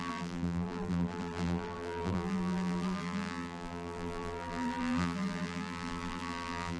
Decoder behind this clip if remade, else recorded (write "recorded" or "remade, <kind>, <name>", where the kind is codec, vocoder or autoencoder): remade, vocoder, BigVGAN v2